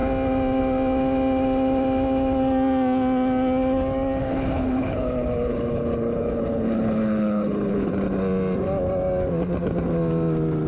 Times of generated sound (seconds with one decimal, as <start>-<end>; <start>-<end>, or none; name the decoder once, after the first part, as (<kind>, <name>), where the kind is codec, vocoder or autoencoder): 4.2-7.9 (codec, HILCodec)